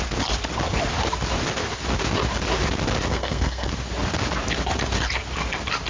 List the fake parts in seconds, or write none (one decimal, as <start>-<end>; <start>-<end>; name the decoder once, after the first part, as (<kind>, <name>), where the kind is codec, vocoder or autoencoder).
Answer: 3.1-3.7 (codec, SNAC)

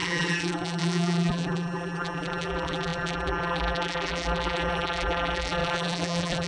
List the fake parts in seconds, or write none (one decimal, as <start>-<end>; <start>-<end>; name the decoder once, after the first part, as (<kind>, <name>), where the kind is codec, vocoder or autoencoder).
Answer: 0.0-6.5 (vocoder, BigVGAN v2)